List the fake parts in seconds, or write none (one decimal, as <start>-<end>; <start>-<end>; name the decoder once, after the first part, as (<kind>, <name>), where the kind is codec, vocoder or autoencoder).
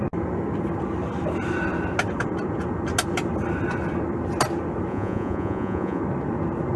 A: 4.9-6.0 (vocoder, Vocos)